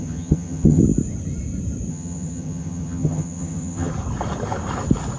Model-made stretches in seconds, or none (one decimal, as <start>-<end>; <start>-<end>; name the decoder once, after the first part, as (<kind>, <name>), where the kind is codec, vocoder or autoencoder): 0.0-0.8 (vocoder, HiFi-GAN); 1.9-3.9